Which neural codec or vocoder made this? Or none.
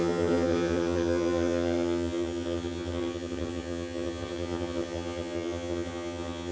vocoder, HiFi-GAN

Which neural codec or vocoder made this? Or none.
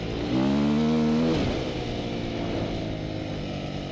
none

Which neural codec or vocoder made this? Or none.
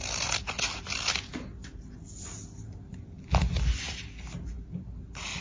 none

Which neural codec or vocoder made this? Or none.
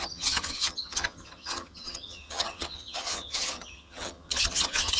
vocoder, HiFi-GAN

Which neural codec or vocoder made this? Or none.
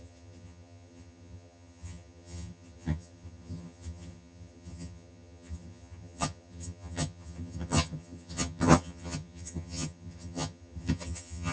vocoder, HiFi-GAN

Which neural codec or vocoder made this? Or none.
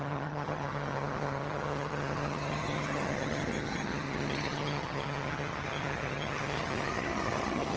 vocoder, HiFi-GAN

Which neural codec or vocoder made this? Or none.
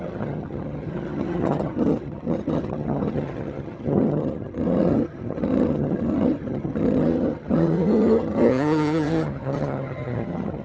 vocoder, HiFi-GAN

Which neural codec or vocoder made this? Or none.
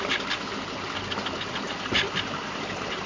none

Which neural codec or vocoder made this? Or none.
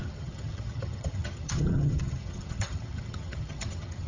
vocoder, HiFi-GAN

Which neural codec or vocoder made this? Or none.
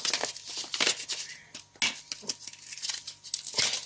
none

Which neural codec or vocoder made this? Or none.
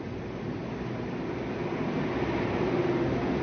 none